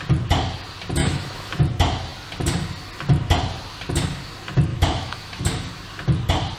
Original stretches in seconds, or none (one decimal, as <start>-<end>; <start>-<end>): 0.0-1.0; 1.6-4.7; 5.4-6.6